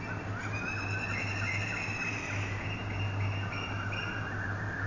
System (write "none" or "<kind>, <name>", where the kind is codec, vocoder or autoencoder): none